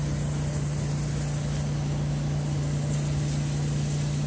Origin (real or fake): real